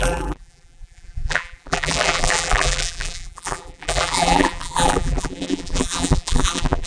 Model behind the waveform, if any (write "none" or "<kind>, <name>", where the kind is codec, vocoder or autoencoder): vocoder, BigVGAN v2